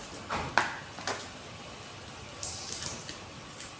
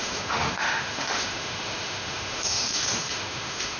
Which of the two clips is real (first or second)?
first